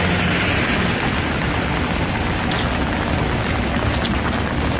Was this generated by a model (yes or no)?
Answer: no